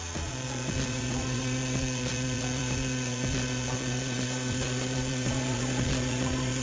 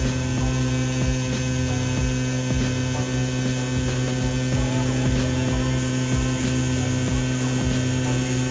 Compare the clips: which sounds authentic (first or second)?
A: second